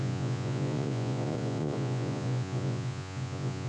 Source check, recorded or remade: remade